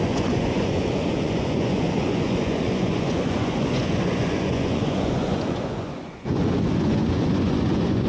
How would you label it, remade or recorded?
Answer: remade